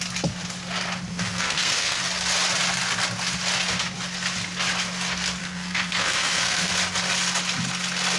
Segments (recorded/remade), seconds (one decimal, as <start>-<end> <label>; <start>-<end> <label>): 0.0-1.1 recorded; 1.1-2.0 remade; 2.0-5.4 recorded; 5.4-6.7 remade; 6.7-8.2 recorded